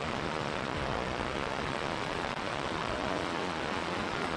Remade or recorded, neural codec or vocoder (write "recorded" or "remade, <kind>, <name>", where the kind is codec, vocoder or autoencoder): remade, vocoder, Vocos